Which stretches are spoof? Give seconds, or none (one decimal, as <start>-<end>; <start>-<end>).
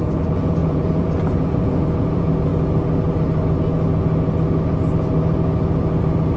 0.0-2.5